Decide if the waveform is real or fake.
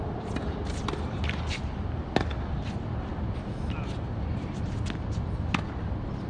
real